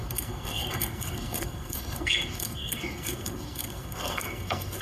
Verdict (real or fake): fake